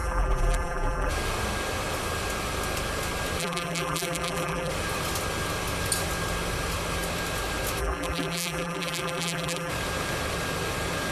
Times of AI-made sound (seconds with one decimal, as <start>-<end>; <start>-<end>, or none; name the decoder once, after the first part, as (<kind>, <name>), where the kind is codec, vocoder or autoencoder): 0.0-1.1 (vocoder, BigVGAN v2); 3.4-4.7; 7.8-9.7